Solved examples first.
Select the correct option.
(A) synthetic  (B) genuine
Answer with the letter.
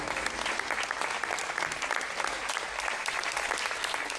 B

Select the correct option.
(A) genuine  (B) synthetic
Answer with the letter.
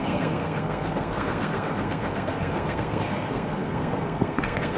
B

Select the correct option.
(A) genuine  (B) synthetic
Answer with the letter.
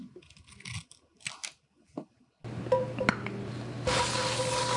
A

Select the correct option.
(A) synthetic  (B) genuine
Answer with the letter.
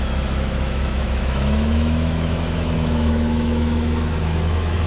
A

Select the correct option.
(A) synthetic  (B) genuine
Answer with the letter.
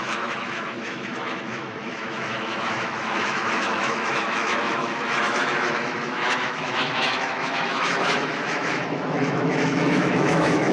A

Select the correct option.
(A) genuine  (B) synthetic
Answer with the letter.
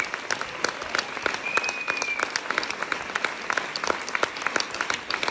A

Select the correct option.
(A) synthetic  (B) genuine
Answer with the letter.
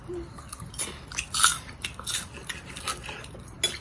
B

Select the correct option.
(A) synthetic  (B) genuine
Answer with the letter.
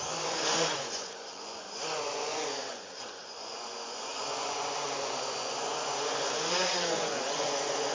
A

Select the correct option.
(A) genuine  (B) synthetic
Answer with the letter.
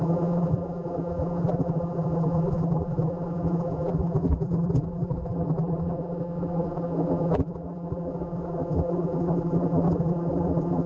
B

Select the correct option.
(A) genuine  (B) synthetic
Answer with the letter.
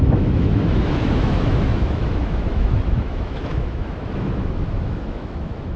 B